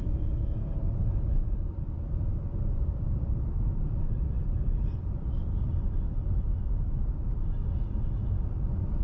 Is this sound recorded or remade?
remade